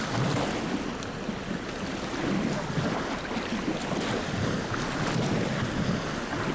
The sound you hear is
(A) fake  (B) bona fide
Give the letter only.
B